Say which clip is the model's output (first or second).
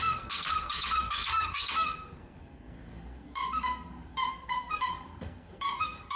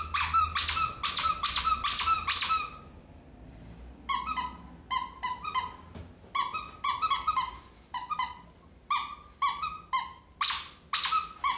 first